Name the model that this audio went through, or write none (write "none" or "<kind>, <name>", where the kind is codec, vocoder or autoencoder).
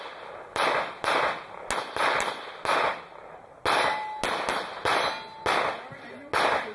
none